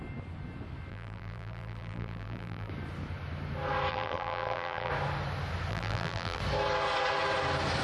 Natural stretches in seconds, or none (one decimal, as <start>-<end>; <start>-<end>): 0.0-0.9; 2.7-3.9; 4.9-5.7; 6.4-7.8

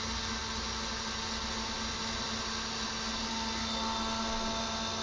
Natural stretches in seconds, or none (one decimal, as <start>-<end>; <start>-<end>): 0.0-5.0